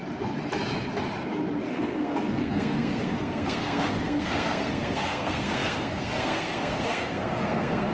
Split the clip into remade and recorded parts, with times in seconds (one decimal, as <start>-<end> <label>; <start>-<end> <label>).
0.0-1.7 recorded; 1.7-7.9 remade